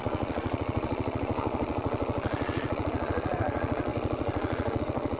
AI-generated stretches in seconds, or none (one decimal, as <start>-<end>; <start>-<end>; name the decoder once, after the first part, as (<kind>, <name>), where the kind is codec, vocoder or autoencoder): 0.0-5.2 (vocoder, Vocos)